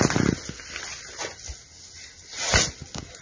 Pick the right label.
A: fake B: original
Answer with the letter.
B